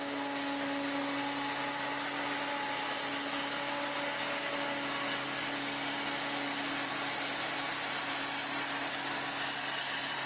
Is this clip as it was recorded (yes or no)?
yes